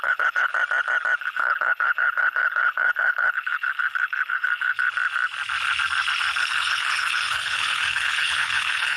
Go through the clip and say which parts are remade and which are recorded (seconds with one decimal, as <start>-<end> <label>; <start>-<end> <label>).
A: 0.0-0.5 remade; 0.5-1.2 recorded; 1.2-4.9 remade; 4.9-6.4 recorded; 6.4-9.0 remade